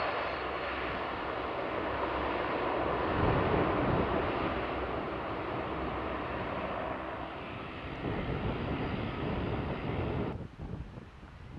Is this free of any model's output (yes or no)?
yes